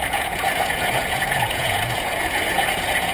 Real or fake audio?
fake